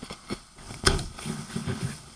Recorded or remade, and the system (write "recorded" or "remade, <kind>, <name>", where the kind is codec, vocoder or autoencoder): remade, codec, HILCodec